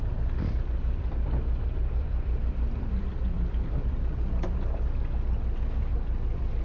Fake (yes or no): yes